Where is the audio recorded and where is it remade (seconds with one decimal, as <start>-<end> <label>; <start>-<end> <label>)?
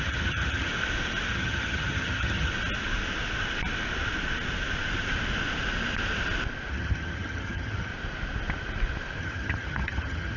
0.0-0.7 remade; 0.7-1.3 recorded; 1.3-2.5 remade; 2.5-6.7 recorded; 6.7-7.9 remade; 7.9-9.2 recorded; 9.2-10.4 remade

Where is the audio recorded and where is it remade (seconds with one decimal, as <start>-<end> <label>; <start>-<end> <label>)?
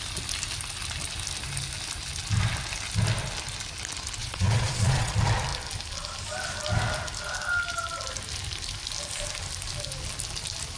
0.0-4.2 recorded; 4.2-5.1 remade; 5.1-10.8 recorded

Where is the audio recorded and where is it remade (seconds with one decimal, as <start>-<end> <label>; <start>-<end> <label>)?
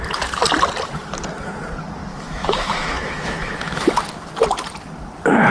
0.0-2.1 recorded; 2.1-3.9 remade; 3.9-5.5 recorded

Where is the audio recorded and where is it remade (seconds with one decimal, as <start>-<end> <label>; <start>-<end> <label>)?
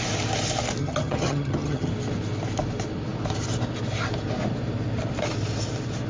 0.0-0.8 recorded; 0.8-1.9 remade; 1.9-6.1 recorded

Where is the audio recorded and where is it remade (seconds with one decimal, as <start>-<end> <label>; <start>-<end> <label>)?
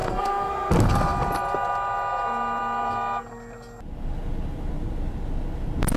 0.0-0.7 remade; 0.7-6.0 recorded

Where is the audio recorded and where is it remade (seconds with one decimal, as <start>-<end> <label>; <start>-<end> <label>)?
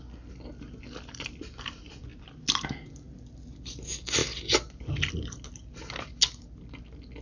0.0-7.2 recorded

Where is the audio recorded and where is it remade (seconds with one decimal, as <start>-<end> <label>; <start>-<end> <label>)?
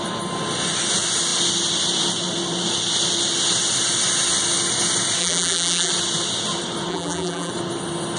0.0-5.2 recorded; 5.2-5.9 remade; 5.9-6.9 recorded; 6.9-7.5 remade; 7.5-8.2 recorded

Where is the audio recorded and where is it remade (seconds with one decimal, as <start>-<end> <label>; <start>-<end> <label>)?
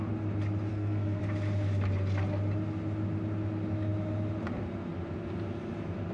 0.0-0.7 recorded; 0.7-1.2 remade; 1.2-6.1 recorded